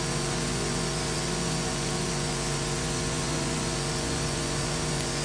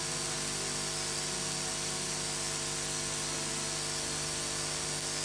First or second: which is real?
second